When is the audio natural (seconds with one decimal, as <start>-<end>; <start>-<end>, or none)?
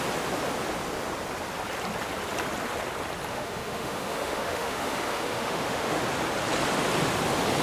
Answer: 0.0-3.3; 6.0-7.6